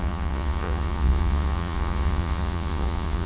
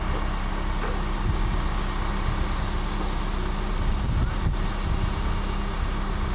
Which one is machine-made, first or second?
first